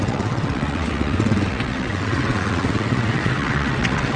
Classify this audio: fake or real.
fake